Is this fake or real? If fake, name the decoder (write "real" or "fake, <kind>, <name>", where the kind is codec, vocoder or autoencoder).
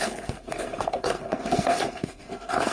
fake, codec, SNAC